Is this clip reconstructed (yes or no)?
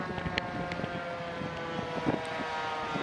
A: no